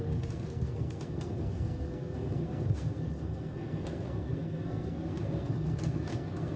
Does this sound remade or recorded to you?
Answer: remade